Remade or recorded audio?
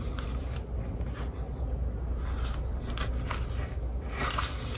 recorded